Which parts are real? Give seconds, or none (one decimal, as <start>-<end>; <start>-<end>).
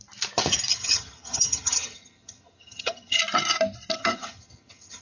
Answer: 0.0-0.7; 3.2-4.0